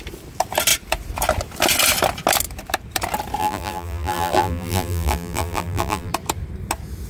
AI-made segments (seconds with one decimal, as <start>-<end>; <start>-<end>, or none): 3.4-6.1